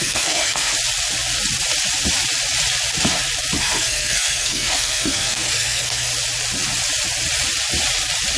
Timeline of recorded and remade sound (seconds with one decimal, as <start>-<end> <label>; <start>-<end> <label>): 0.0-0.7 remade; 0.7-3.6 recorded; 3.6-6.1 remade; 6.1-8.4 recorded